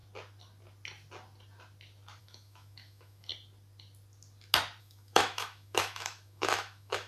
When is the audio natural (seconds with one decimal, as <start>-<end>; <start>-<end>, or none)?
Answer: 0.0-2.2; 3.3-4.8